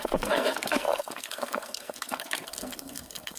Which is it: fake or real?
fake